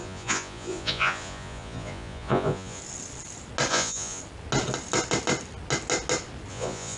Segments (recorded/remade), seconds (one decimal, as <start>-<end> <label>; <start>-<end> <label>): 0.0-2.8 remade; 2.8-3.7 recorded; 3.7-4.2 remade; 4.2-6.5 recorded; 6.5-7.0 remade